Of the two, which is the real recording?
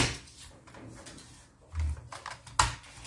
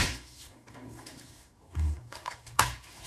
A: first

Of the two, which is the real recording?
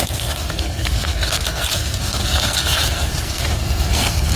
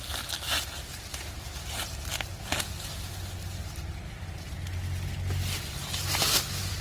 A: second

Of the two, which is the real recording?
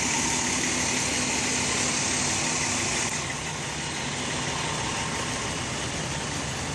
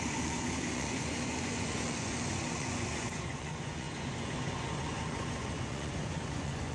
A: first